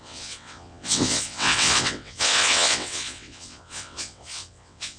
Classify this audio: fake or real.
fake